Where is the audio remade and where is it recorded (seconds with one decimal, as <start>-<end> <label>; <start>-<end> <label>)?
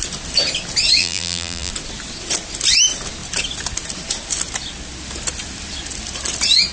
0.0-1.0 recorded; 1.0-1.7 remade; 1.7-6.7 recorded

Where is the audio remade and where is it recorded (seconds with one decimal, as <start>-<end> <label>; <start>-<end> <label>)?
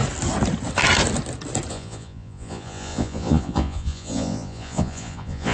0.0-1.7 recorded; 1.7-5.5 remade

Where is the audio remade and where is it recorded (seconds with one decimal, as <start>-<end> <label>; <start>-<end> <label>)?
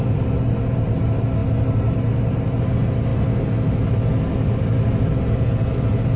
0.0-6.2 recorded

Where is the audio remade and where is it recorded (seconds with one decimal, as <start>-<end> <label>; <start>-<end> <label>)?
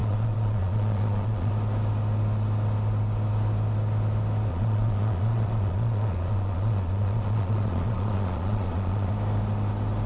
0.0-1.5 remade; 1.5-4.5 recorded; 4.5-9.1 remade; 9.1-10.1 recorded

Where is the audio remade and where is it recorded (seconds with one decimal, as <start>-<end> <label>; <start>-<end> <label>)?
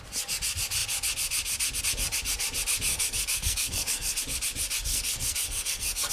0.0-2.9 recorded; 2.9-4.2 remade; 4.2-4.9 recorded; 4.9-6.1 remade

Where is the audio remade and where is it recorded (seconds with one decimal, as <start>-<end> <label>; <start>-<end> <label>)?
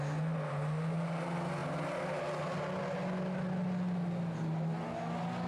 0.0-5.5 recorded